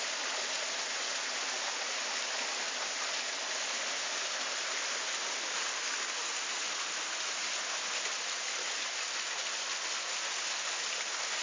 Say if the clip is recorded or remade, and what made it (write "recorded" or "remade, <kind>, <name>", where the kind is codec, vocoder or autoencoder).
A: recorded